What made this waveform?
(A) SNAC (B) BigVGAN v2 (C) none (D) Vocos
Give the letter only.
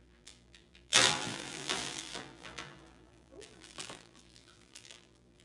B